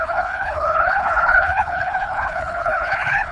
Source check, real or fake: fake